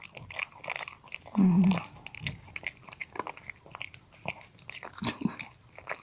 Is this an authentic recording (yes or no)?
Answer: yes